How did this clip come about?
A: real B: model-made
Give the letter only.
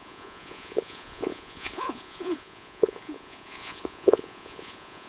B